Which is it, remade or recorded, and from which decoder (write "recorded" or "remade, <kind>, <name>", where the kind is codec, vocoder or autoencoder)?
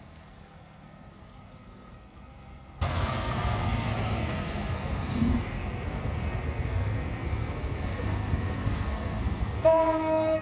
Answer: remade, codec, SNAC